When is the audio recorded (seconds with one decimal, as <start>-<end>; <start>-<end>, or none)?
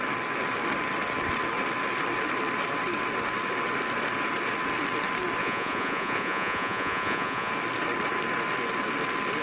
0.0-5.4; 7.5-9.4